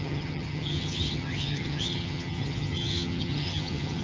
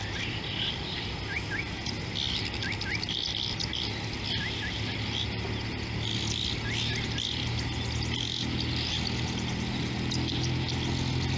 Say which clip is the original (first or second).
second